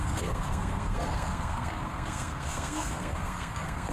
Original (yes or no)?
no